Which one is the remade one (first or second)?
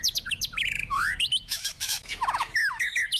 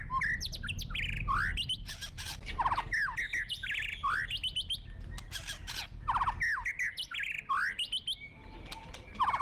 first